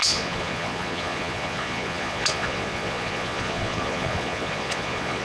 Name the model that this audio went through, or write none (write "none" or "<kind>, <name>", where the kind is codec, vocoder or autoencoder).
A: vocoder, Vocos